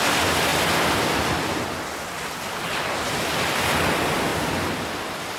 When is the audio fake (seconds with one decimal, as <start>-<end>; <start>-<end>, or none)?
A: none